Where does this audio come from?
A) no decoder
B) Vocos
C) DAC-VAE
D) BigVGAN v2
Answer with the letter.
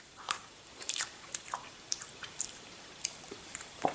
D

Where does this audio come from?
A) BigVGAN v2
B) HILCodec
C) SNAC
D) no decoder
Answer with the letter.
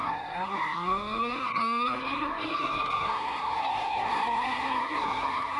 C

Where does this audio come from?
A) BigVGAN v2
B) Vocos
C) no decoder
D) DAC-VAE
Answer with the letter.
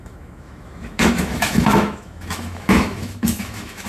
D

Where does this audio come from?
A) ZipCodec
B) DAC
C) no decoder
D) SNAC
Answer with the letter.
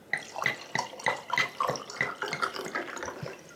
C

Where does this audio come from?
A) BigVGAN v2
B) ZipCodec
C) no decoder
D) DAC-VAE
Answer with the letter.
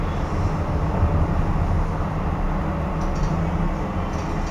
C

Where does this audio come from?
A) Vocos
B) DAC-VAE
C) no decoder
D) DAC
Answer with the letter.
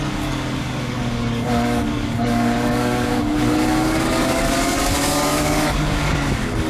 D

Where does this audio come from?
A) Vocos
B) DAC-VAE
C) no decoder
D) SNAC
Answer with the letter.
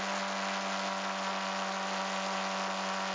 C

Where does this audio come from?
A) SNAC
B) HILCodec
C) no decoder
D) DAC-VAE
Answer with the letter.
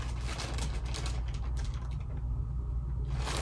C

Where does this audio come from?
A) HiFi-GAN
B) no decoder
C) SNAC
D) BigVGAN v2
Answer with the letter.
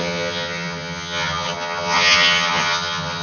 A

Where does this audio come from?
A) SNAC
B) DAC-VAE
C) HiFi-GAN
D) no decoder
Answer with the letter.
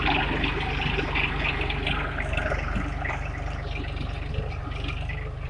D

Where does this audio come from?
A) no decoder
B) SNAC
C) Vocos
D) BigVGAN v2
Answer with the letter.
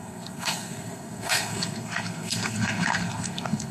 B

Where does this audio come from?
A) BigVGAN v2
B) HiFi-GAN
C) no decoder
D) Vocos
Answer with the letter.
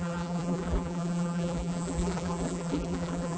A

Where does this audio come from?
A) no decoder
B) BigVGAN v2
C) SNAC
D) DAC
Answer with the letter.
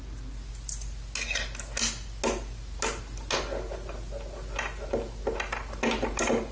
A